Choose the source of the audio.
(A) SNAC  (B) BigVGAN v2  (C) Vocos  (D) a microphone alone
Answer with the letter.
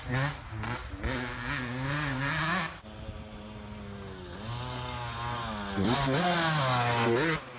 D